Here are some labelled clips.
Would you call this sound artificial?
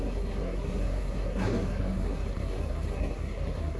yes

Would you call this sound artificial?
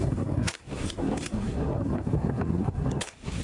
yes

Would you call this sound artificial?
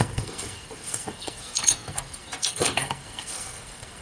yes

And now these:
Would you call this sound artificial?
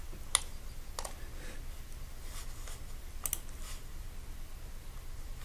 no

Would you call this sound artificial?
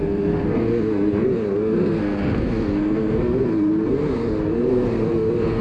yes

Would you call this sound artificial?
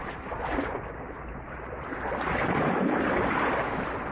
no